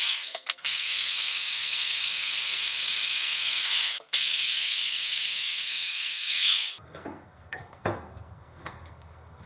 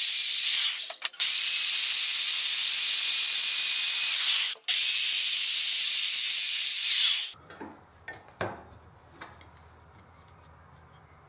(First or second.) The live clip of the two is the second